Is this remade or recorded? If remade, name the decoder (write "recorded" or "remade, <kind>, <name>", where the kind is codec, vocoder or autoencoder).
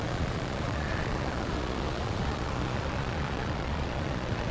remade, vocoder, Vocos